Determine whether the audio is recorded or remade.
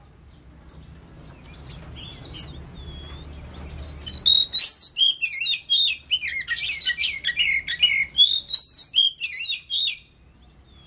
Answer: recorded